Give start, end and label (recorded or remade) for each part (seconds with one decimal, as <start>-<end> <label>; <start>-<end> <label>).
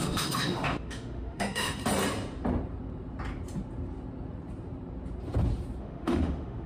0.0-1.8 remade; 1.8-5.8 recorded; 5.8-6.7 remade